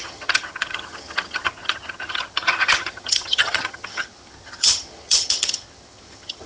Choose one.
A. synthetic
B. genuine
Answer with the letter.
A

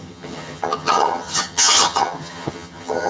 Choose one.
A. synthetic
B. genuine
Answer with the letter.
A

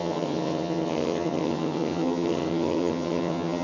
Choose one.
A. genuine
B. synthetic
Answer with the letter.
B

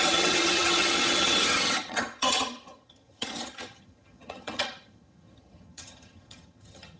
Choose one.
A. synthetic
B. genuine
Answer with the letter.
A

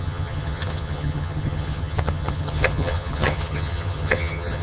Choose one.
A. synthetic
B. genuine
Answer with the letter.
A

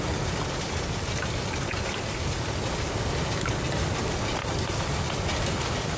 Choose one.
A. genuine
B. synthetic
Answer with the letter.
A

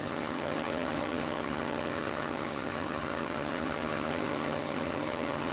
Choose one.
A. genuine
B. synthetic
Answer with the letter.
B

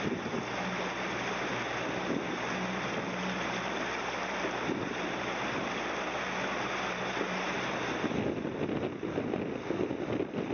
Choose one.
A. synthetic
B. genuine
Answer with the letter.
B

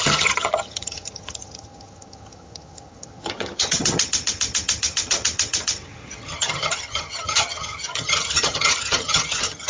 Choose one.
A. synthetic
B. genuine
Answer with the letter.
A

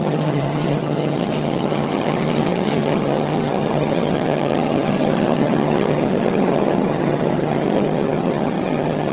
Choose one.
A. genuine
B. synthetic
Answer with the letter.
B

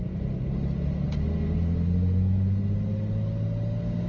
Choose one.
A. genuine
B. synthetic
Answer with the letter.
A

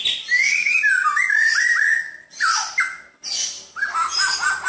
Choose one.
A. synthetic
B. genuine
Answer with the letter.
B